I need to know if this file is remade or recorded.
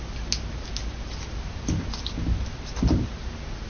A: recorded